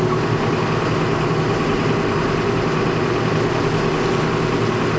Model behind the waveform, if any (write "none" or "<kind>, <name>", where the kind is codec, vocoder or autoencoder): none